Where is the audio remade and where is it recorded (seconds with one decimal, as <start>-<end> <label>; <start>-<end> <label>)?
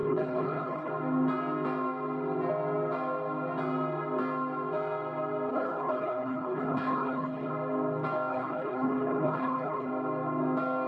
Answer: 0.0-0.9 remade; 0.9-5.5 recorded; 5.5-7.5 remade; 7.5-8.3 recorded; 8.3-9.9 remade; 9.9-10.9 recorded